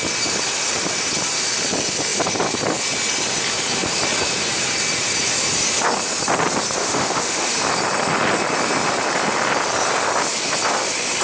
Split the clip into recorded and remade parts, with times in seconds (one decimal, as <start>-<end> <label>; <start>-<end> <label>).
0.0-6.8 recorded; 6.8-7.5 remade; 7.5-11.2 recorded